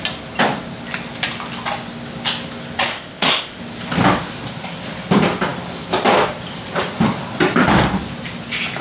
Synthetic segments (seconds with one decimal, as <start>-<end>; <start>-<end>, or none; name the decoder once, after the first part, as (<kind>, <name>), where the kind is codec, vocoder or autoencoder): 2.9-3.6 (codec, ZipCodec)